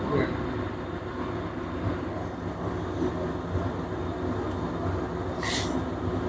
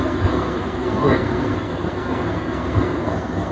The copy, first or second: second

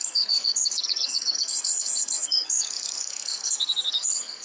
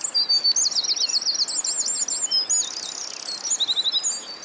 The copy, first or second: first